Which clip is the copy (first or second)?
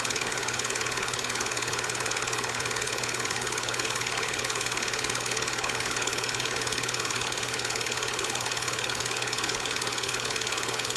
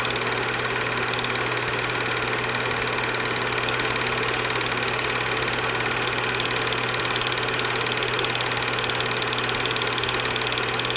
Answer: first